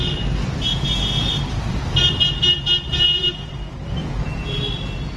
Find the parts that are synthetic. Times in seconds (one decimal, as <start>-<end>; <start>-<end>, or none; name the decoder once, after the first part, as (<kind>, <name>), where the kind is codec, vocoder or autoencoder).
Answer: 0.7-1.4 (vocoder, Vocos); 2.9-3.5; 4.0-4.6

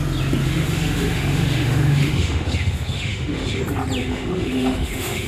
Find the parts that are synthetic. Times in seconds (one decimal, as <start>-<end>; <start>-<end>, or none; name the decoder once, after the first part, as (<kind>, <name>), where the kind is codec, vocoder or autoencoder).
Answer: 0.4-3.6 (autoencoder, DAC-VAE); 4.0-5.3

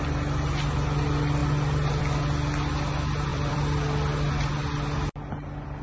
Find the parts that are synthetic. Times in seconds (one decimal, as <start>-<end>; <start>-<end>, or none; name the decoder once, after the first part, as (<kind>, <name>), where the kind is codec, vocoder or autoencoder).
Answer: 3.3-4.3 (vocoder, BigVGAN v2)